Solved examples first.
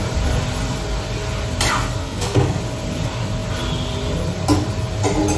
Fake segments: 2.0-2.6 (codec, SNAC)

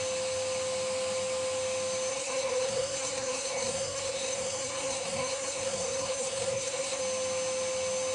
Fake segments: 2.1-7.0 (codec, SNAC)

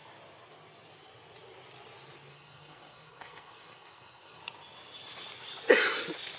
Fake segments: 2.3-4.4 (codec, SNAC)

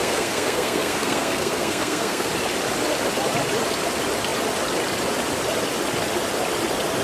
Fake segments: 0.0-2.3 (codec, SNAC)

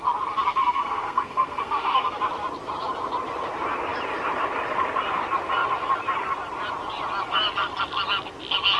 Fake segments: 0.6-2.2 (codec, SNAC)

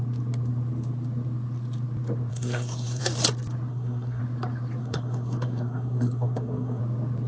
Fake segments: 2.3-3.0 (codec, SNAC); 3.7-4.2; 4.8-6.8